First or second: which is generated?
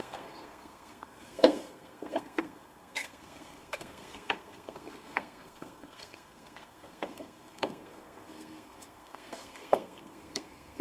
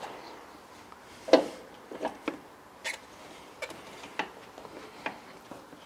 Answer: first